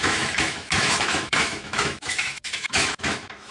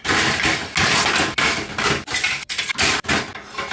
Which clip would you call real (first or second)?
second